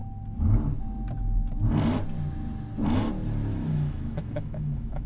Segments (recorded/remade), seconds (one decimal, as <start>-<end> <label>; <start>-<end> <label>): 0.0-3.5 recorded; 3.5-5.1 remade